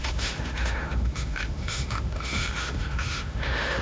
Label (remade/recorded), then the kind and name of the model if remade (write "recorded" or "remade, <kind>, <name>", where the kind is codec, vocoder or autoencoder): remade, autoencoder, DAC-VAE